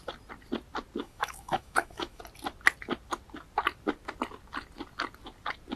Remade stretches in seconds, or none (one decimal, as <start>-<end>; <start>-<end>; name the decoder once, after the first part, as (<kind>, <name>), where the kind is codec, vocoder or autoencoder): 1.0-2.2 (autoencoder, DAC-VAE)